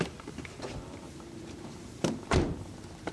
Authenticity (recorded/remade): remade